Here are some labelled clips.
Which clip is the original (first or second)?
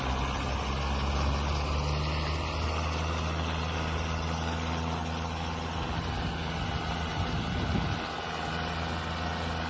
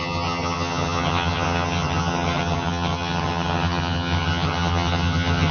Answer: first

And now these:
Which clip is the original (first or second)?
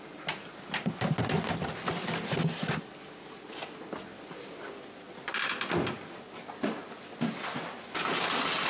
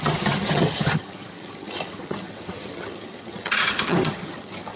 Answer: first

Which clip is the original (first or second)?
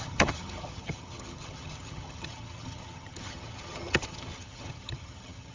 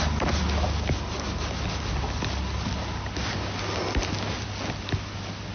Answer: second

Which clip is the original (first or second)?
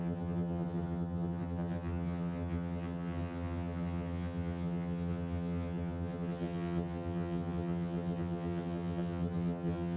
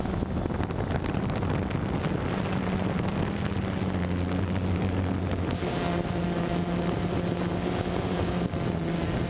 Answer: second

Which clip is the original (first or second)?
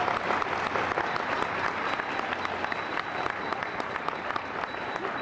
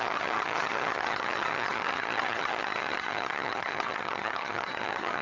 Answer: first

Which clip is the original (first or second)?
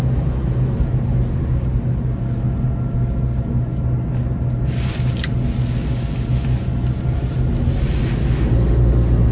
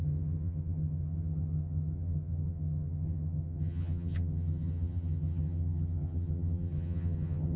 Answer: first